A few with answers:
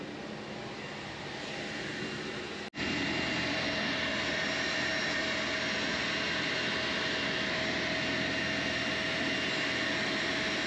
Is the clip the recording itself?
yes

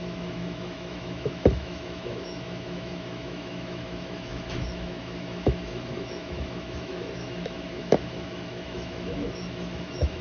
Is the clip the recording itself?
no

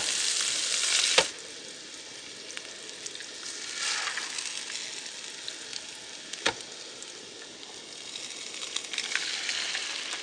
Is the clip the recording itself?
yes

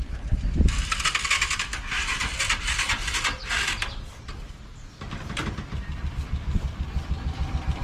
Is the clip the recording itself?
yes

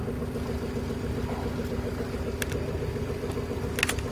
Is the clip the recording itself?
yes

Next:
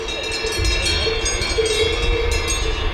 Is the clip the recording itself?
yes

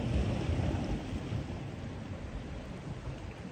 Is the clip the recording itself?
yes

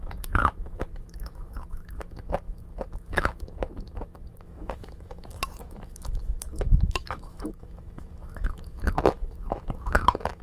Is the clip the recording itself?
no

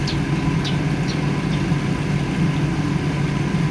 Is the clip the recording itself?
yes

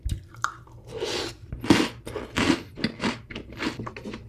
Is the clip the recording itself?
yes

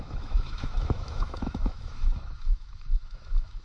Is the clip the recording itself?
no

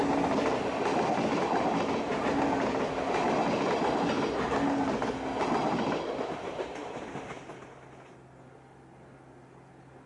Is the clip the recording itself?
yes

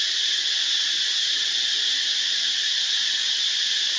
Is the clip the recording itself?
yes